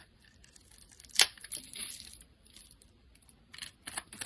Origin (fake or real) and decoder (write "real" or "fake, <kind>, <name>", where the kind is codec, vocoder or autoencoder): fake, vocoder, BigVGAN v2